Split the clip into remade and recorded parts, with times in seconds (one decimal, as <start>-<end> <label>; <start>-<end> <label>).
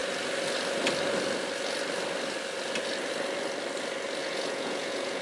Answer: 0.0-4.2 recorded; 4.2-5.2 remade